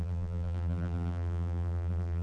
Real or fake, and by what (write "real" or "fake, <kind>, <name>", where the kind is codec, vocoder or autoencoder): fake, vocoder, BigVGAN v2